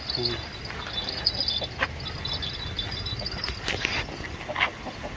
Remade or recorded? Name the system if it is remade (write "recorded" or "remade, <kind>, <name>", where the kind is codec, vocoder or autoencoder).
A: recorded